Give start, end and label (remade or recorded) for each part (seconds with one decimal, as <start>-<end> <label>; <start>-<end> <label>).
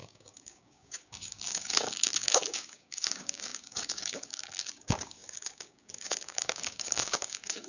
0.0-7.7 remade